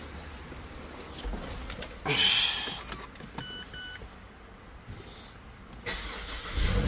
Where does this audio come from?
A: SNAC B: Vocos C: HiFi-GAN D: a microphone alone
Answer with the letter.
D